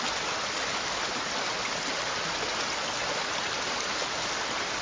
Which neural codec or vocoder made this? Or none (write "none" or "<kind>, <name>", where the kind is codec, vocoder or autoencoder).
none